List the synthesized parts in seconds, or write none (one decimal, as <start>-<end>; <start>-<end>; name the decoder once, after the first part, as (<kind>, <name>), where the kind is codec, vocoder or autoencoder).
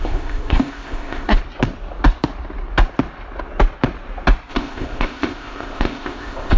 0.0-1.4 (codec, ZipCodec); 4.5-6.6